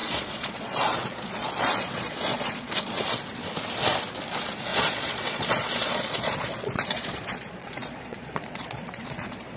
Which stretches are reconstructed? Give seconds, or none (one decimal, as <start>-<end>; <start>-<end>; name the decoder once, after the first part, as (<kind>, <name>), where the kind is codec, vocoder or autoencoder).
0.0-3.0 (vocoder, Vocos); 4.7-9.6